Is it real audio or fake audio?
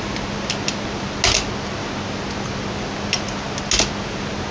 real